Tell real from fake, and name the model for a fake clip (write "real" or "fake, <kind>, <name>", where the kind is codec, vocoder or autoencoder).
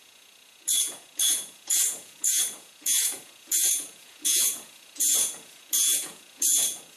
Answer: fake, vocoder, Vocos